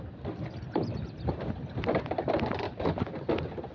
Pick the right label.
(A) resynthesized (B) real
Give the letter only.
A